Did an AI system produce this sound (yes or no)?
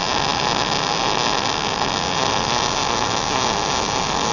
no